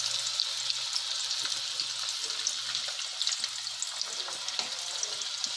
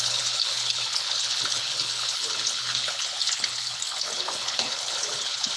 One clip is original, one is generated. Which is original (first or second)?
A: first